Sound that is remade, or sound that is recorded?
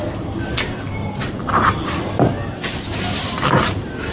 recorded